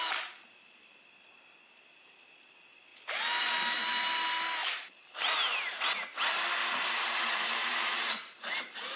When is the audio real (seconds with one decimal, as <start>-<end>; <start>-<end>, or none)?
0.0-4.6; 5.8-6.6; 8.6-9.0